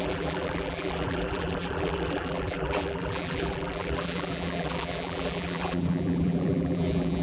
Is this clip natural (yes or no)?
no